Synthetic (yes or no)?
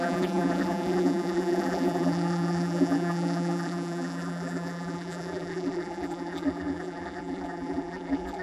yes